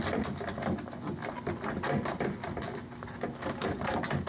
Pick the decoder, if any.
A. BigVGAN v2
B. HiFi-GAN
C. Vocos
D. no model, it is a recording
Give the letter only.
D